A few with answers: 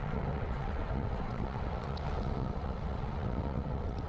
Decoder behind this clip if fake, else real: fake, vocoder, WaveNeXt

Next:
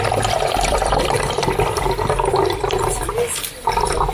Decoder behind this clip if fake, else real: fake, vocoder, BigVGAN v2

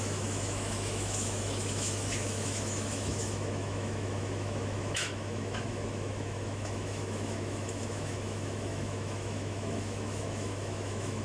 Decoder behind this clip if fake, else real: fake, autoencoder, DAC-VAE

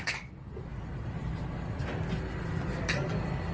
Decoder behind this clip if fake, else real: real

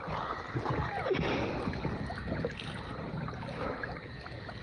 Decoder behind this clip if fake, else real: real